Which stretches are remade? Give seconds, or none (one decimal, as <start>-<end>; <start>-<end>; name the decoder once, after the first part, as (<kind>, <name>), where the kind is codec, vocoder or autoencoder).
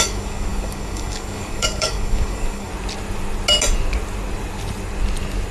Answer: 0.0-2.7 (codec, DAC)